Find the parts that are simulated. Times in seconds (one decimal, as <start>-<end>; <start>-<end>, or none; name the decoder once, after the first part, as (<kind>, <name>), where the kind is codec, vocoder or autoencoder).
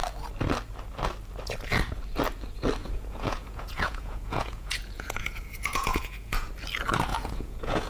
2.8-6.5 (vocoder, Vocos); 7.1-7.9